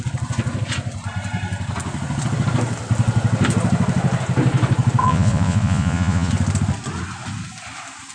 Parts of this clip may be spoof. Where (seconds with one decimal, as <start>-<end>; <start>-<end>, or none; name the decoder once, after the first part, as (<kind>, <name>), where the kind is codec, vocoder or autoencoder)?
5.0-6.3 (vocoder, Vocos)

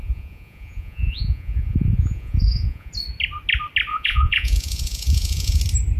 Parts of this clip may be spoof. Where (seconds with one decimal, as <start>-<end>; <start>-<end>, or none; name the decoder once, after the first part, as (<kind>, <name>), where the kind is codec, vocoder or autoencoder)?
0.0-2.9 (vocoder, Vocos); 3.9-5.6

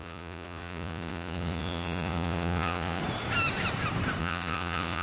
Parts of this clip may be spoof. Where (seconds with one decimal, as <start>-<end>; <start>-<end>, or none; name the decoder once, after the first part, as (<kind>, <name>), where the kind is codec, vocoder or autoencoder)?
0.0-3.0 (vocoder, Vocos); 4.2-5.0

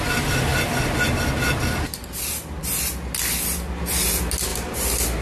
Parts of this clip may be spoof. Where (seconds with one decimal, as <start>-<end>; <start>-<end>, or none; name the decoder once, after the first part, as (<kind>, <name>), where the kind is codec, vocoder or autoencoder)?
none

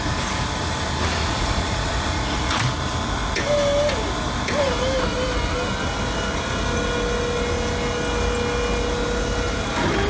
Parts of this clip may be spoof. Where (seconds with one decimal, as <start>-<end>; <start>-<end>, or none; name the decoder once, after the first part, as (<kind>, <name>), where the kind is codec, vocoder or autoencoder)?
1.1-2.6 (vocoder, Vocos)